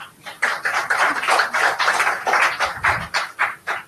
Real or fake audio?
fake